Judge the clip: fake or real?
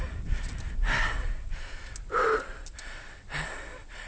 real